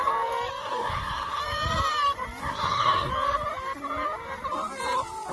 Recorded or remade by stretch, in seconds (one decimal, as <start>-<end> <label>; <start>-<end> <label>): 0.0-0.6 recorded; 0.6-1.4 remade; 1.4-2.4 recorded; 2.4-3.1 remade; 3.1-5.3 recorded